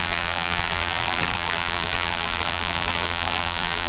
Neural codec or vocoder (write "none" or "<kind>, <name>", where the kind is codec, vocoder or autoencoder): vocoder, BigVGAN v2